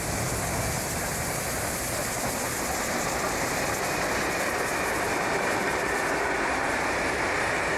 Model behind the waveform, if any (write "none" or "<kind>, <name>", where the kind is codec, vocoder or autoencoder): none